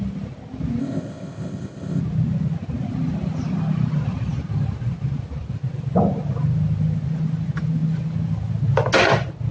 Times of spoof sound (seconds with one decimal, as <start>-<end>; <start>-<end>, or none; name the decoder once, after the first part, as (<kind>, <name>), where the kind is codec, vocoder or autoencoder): 0.8-2.0 (codec, ZipCodec)